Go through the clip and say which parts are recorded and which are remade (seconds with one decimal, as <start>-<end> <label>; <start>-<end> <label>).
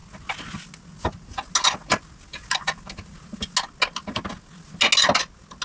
0.0-5.6 recorded